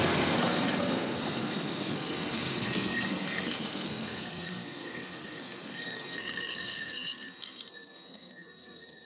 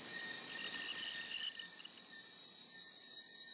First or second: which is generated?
first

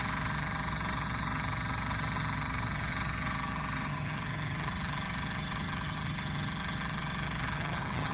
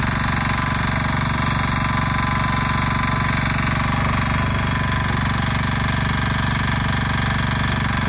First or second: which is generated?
first